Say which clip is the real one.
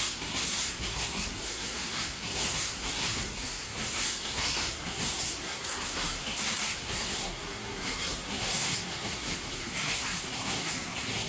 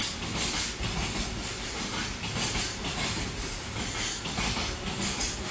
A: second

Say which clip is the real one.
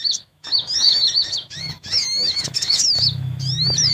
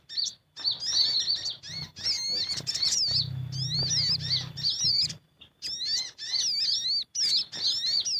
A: second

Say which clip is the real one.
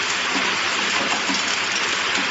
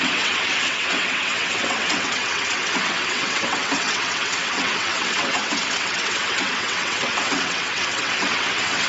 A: first